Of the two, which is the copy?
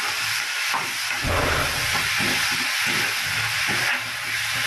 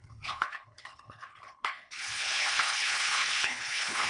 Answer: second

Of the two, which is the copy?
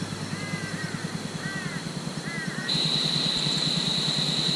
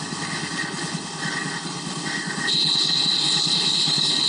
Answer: second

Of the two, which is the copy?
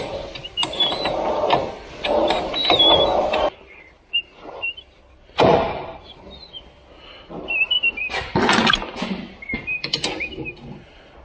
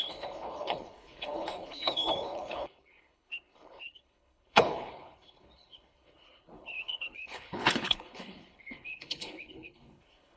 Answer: second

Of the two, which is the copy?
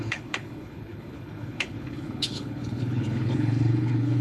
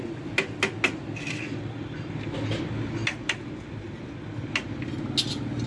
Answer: first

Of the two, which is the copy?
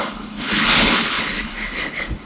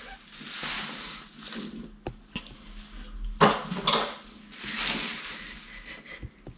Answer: first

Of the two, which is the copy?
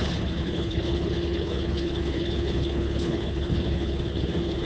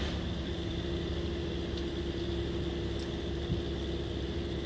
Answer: first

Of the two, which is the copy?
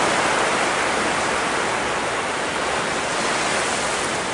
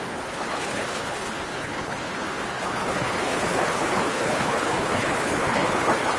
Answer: second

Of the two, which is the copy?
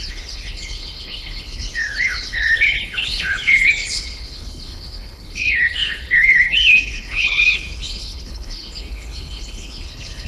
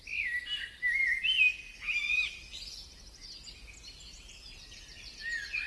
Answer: first